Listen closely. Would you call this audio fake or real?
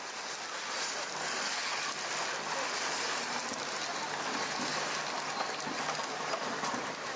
real